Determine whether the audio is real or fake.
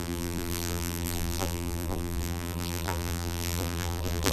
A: fake